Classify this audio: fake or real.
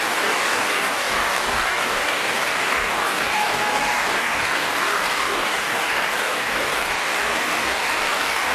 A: fake